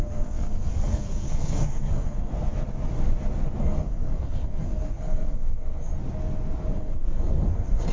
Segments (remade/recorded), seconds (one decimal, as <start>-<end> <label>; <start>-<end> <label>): 0.0-2.3 remade; 2.3-3.6 recorded; 3.6-5.9 remade; 5.9-6.7 recorded; 6.7-7.9 remade